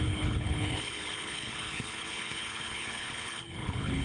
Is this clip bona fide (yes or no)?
no